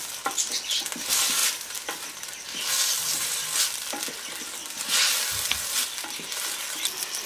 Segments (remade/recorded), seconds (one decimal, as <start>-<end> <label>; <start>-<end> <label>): 0.0-1.4 recorded; 1.4-4.1 remade; 4.1-7.3 recorded